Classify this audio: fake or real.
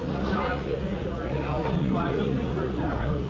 fake